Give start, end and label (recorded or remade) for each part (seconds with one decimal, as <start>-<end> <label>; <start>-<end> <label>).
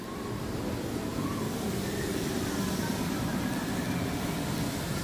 0.0-1.1 recorded; 1.1-3.8 remade; 3.8-5.0 recorded